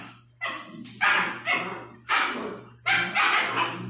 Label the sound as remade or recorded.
recorded